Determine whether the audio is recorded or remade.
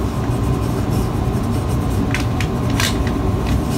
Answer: recorded